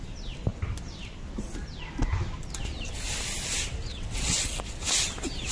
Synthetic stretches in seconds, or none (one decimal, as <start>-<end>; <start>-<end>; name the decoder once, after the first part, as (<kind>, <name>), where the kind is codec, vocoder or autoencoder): 3.9-4.6 (vocoder, WaveNeXt)